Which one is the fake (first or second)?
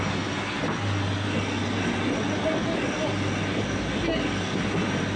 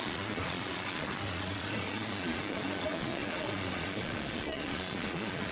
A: second